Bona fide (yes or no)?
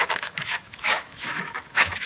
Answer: no